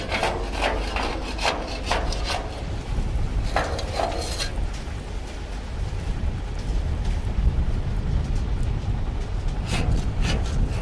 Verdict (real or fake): real